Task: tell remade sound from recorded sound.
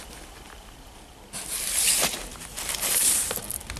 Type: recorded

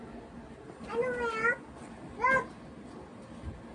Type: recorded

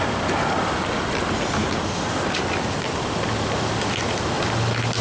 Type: recorded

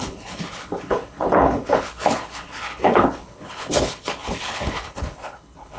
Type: remade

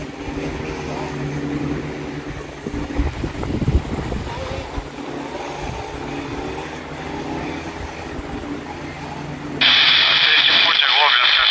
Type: recorded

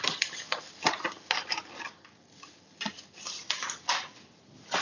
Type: recorded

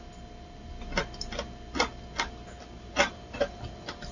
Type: recorded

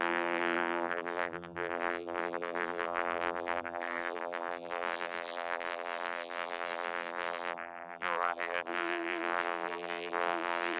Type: remade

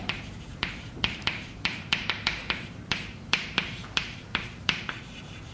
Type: remade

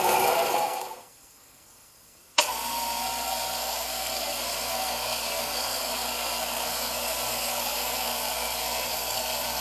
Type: remade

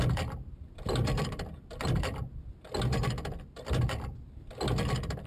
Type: remade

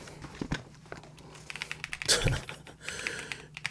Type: recorded